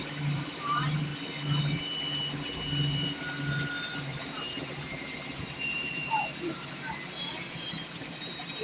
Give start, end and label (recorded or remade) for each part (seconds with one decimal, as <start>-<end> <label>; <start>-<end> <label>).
0.0-1.1 remade; 1.1-4.0 recorded; 4.0-8.6 remade